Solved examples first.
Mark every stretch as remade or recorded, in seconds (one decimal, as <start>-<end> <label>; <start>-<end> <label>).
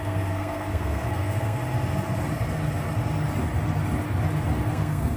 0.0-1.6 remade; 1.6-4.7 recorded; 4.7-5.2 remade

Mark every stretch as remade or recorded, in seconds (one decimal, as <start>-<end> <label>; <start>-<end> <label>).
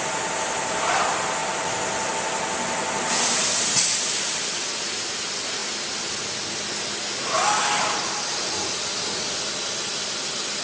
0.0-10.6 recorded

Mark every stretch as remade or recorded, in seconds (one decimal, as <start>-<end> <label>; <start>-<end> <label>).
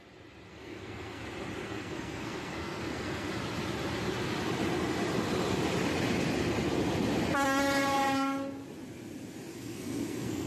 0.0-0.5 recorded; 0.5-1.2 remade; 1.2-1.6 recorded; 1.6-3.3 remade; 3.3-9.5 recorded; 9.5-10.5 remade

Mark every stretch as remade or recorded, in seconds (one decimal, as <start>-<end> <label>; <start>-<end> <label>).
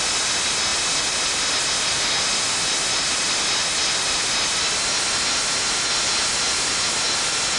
0.0-7.6 recorded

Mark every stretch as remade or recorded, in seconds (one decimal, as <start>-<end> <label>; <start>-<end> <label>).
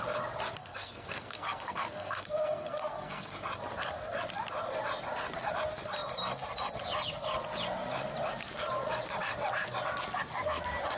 0.0-0.6 recorded; 0.6-3.3 remade; 3.3-11.0 recorded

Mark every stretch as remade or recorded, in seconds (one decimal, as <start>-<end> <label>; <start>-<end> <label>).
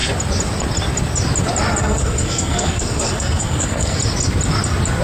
0.0-1.8 recorded; 1.8-4.0 remade; 4.0-5.0 recorded